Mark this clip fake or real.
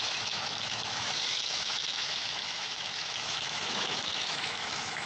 fake